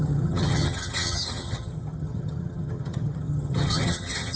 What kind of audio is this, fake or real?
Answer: fake